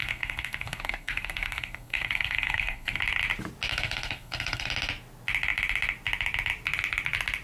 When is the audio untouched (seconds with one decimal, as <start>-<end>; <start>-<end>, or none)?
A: 3.0-3.7; 4.7-7.4